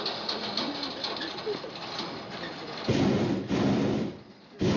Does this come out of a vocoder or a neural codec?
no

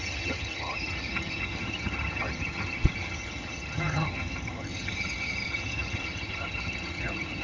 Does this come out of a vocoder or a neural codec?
yes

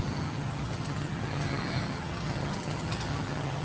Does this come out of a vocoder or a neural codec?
yes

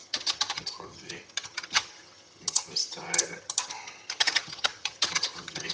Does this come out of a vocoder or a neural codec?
yes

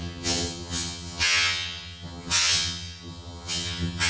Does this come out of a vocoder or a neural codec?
yes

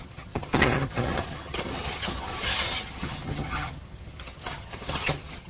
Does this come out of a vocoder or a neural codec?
yes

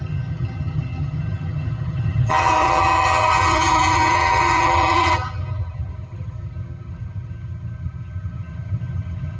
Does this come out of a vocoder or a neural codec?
yes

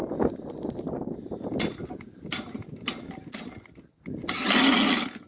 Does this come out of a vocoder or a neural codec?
no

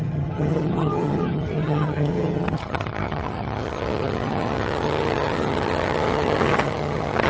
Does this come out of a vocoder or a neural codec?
yes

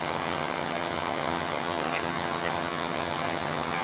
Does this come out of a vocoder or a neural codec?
yes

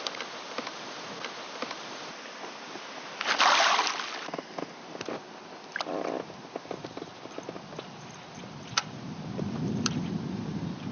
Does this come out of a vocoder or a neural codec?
no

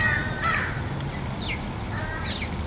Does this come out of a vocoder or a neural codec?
no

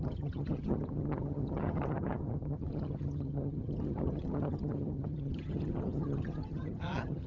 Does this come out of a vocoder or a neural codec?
yes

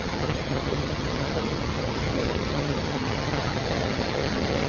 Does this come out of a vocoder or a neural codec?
yes